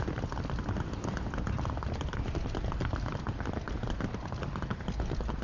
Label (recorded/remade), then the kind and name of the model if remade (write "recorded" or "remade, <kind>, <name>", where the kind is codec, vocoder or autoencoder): recorded